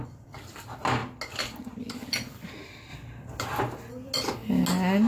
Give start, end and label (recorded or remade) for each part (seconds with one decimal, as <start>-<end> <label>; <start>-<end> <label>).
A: 0.0-5.1 recorded